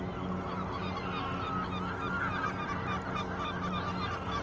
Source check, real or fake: real